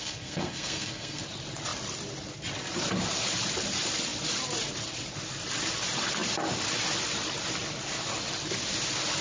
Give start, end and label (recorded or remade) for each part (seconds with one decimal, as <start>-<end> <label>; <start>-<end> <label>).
0.0-1.2 remade; 1.2-9.2 recorded